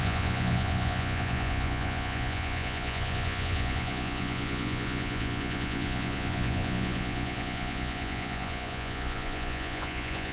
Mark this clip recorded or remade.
remade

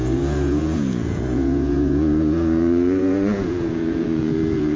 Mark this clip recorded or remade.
remade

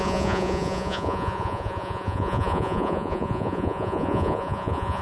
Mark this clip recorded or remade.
remade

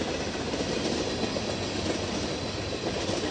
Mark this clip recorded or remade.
recorded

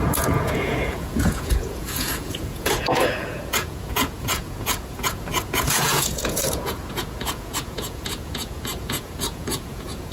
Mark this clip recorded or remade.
remade